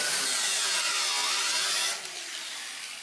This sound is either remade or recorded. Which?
recorded